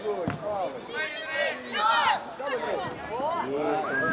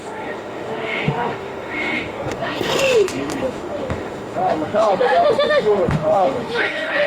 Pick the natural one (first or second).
first